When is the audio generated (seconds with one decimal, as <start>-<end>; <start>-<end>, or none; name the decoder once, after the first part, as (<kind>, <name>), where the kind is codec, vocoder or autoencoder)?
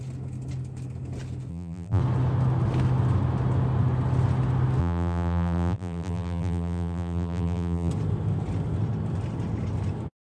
1.5-2.0 (vocoder, BigVGAN v2); 4.8-7.9